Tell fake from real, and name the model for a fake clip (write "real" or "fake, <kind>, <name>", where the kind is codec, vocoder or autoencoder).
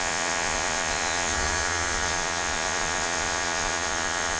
fake, vocoder, Vocos